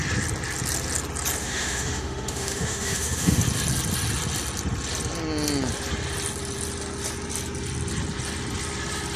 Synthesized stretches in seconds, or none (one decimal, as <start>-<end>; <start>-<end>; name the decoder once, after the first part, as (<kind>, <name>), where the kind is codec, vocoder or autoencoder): 1.4-3.4 (autoencoder, DAC-VAE)